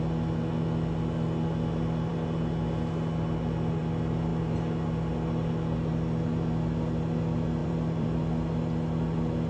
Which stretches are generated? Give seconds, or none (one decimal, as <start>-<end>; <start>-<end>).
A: 7.6-8.2